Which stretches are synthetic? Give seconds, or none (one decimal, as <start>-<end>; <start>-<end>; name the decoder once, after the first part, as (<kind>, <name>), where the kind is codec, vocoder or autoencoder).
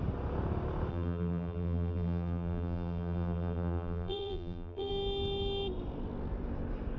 0.9-4.9 (vocoder, BigVGAN v2)